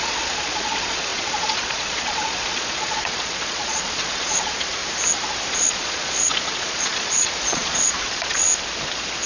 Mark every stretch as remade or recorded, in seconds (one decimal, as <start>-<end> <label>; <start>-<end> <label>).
0.0-4.8 remade; 4.8-5.5 recorded; 5.5-8.5 remade; 8.5-9.3 recorded